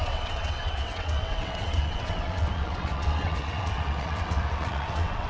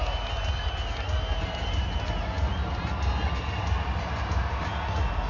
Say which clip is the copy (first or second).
first